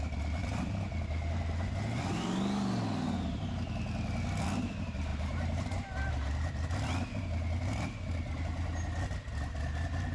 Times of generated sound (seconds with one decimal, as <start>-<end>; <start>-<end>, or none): 5.1-6.1